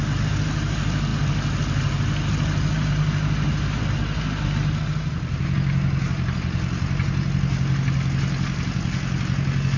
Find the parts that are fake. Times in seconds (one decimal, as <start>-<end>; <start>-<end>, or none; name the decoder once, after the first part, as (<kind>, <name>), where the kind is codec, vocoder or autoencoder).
none